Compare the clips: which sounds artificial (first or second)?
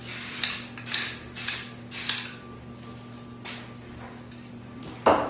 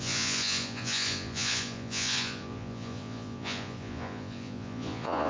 second